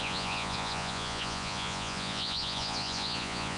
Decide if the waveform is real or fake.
fake